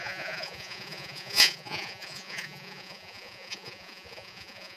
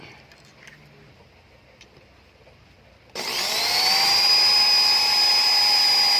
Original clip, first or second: second